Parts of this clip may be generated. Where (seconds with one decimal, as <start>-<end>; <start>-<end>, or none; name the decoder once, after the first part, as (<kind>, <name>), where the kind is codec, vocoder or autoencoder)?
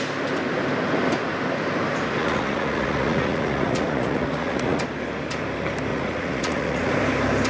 2.2-4.8 (vocoder, Vocos); 5.9-6.9